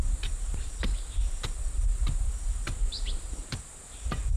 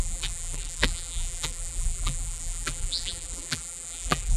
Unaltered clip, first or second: first